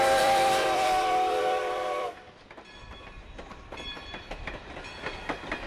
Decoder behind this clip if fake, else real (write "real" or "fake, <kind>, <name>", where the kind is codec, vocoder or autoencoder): fake, vocoder, BigVGAN v2